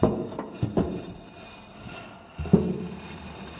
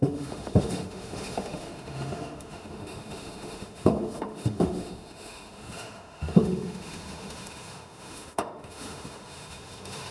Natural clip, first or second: first